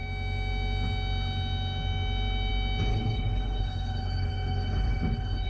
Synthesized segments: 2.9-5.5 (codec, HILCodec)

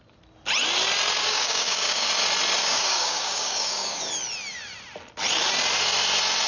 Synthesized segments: 1.2-2.1 (codec, DAC); 2.6-4.0

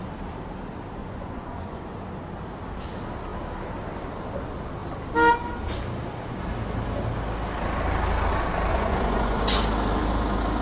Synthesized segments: 1.0-1.9 (vocoder, Vocos); 8.7-9.4

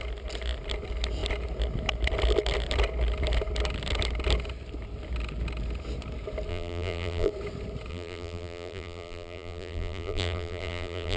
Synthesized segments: 6.5-7.3 (vocoder, BigVGAN v2); 7.9-11.2